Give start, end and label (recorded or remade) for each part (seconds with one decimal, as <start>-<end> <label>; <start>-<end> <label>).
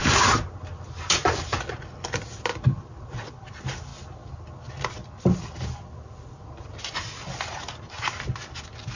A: 0.0-9.0 recorded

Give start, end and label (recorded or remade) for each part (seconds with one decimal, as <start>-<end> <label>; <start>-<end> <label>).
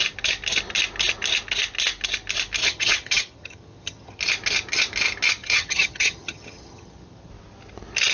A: 0.0-2.6 recorded; 2.6-4.2 remade; 4.2-5.4 recorded; 5.4-7.3 remade; 7.3-8.1 recorded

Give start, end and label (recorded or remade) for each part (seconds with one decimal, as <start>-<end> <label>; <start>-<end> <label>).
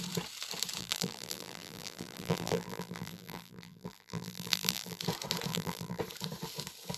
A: 0.0-0.8 recorded; 0.8-5.0 remade; 5.0-5.5 recorded; 5.5-6.0 remade; 6.0-7.0 recorded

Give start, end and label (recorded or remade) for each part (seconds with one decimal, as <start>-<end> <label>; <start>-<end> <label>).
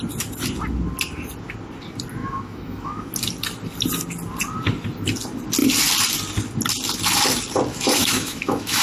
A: 0.0-2.2 recorded; 2.2-3.1 remade; 3.1-7.7 recorded; 7.7-8.8 remade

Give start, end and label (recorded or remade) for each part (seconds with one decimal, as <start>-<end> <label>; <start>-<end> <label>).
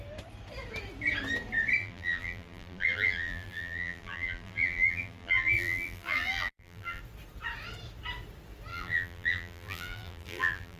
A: 0.0-1.8 recorded; 1.8-7.0 remade; 7.0-8.7 recorded; 8.7-10.8 remade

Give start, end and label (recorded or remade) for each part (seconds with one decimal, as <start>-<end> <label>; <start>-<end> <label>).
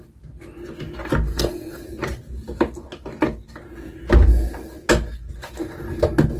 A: 0.0-1.3 recorded; 1.3-1.8 remade; 1.8-6.4 recorded